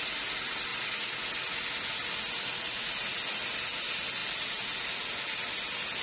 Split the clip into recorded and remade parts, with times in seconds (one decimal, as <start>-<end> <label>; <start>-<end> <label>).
0.0-6.0 recorded